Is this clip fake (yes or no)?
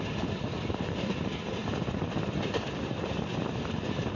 no